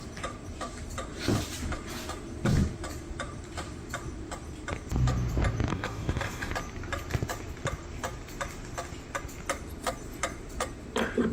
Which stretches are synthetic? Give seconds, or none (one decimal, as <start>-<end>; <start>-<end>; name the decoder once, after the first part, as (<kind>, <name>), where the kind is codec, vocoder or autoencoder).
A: 5.7-6.5 (codec, DAC)